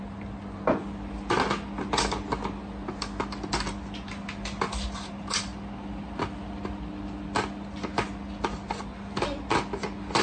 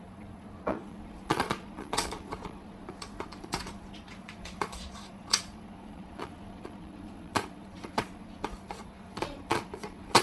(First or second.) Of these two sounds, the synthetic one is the second